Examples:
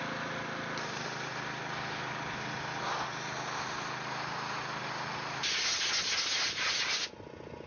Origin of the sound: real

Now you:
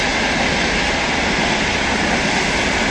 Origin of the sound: real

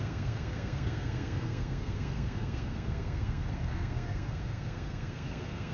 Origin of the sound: fake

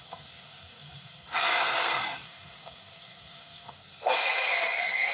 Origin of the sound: fake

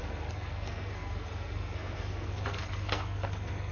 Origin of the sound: fake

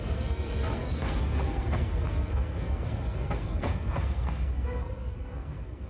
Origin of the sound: fake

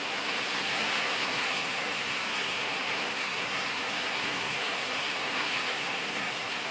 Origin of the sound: fake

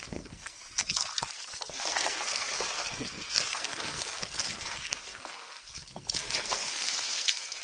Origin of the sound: fake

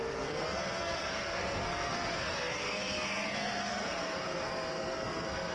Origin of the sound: fake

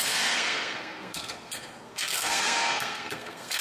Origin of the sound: fake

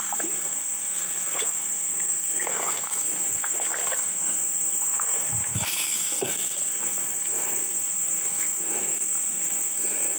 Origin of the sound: fake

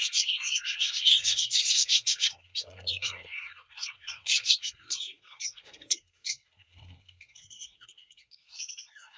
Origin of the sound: fake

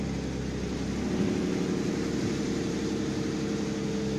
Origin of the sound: real